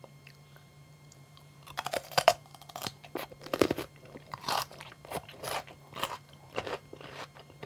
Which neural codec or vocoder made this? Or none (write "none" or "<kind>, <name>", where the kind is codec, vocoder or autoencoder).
vocoder, BigVGAN v2